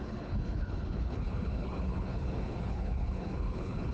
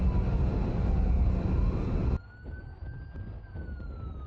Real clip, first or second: second